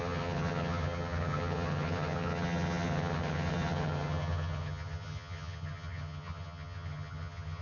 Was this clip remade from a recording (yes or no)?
yes